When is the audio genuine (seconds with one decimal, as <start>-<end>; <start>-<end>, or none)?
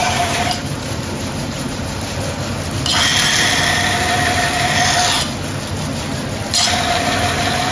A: 2.0-7.7